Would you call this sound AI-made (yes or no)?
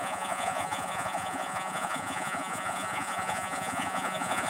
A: yes